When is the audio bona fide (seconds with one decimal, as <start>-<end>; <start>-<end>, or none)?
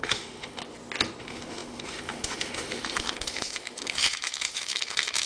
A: 0.6-1.2